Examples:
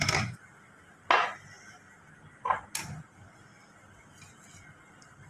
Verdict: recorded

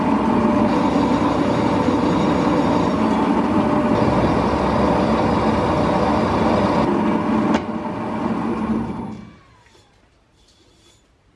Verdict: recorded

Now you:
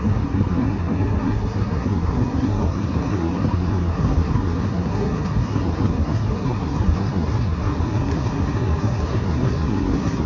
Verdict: remade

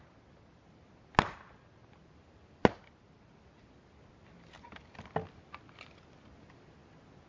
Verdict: recorded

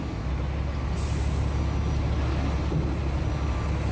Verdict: recorded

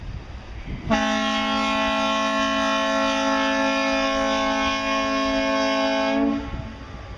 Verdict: recorded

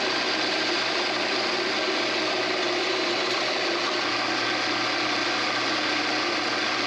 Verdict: recorded